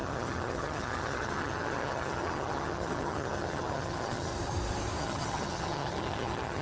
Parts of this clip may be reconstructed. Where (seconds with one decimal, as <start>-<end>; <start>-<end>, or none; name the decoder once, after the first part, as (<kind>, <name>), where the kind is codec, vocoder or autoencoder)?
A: 0.0-4.3 (vocoder, HiFi-GAN); 5.0-6.6